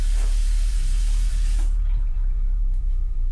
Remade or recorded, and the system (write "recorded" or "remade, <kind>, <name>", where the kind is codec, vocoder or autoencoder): remade, vocoder, BigVGAN v2